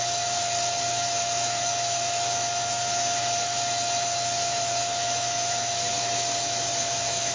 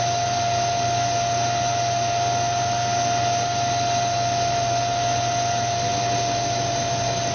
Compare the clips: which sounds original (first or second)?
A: second